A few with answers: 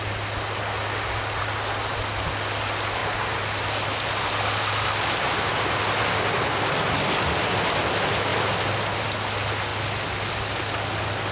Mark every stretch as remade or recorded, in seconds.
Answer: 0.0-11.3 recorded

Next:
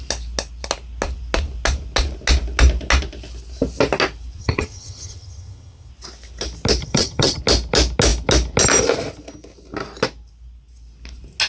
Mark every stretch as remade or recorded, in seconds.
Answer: 0.0-4.4 recorded; 4.4-5.9 remade; 5.9-6.8 recorded; 6.8-7.4 remade; 7.4-11.5 recorded

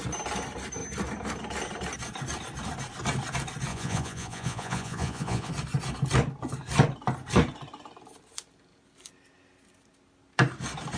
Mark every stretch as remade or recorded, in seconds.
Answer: 0.0-3.7 recorded; 3.7-5.5 remade; 5.5-11.0 recorded